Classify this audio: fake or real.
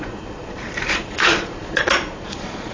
fake